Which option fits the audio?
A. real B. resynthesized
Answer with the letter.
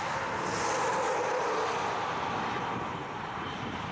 A